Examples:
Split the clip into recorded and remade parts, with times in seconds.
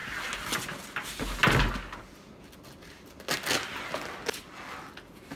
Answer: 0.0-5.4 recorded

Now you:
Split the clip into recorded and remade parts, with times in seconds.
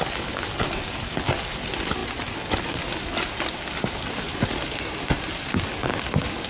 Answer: 0.0-2.0 recorded; 2.0-2.5 remade; 2.5-5.8 recorded; 5.8-6.5 remade